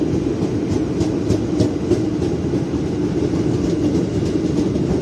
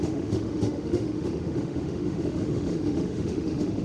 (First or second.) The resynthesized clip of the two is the second